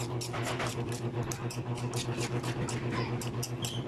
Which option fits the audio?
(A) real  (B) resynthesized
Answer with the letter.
A